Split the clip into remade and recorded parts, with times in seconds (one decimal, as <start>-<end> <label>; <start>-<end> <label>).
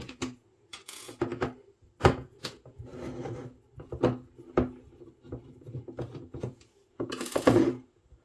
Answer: 0.0-1.3 remade; 1.3-2.0 recorded; 2.0-2.9 remade; 2.9-5.7 recorded; 5.7-8.2 remade